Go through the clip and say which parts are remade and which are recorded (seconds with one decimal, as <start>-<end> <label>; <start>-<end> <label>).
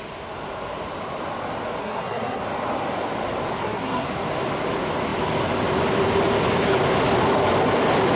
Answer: 0.0-1.8 recorded; 1.8-2.4 remade; 2.4-3.6 recorded; 3.6-4.1 remade; 4.1-8.2 recorded